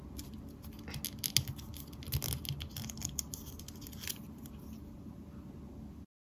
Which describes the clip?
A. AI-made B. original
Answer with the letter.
B